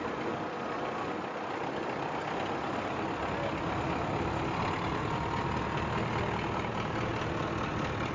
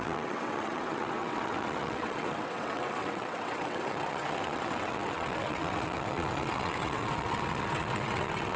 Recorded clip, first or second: first